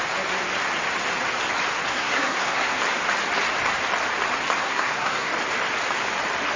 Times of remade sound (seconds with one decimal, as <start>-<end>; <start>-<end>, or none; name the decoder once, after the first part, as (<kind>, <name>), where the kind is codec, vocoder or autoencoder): 1.9-2.8 (codec, SNAC); 4.6-5.3